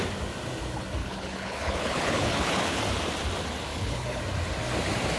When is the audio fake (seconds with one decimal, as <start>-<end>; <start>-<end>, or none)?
1.0-2.8; 3.7-4.2